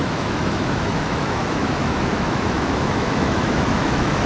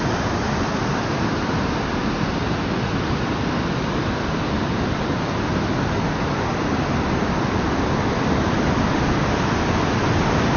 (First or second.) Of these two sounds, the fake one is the first